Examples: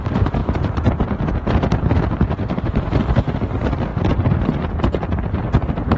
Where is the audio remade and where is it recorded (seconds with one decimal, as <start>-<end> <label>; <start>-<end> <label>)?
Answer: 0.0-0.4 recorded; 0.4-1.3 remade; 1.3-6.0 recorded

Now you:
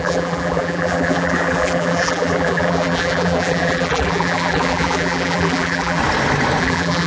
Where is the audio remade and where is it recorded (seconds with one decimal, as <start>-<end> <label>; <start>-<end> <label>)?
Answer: 0.0-6.0 remade; 6.0-6.6 recorded; 6.6-7.1 remade

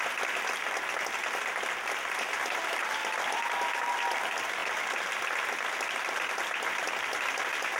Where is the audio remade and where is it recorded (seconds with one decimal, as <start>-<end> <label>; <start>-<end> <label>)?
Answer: 0.0-3.0 recorded; 3.0-4.0 remade; 4.0-7.8 recorded

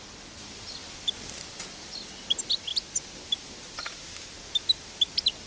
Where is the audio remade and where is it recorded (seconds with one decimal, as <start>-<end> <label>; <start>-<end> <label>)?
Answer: 0.0-0.8 remade; 0.8-1.5 recorded; 1.5-2.7 remade; 2.7-5.5 recorded

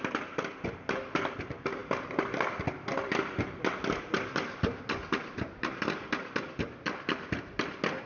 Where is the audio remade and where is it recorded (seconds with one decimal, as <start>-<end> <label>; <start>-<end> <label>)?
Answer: 0.0-8.1 recorded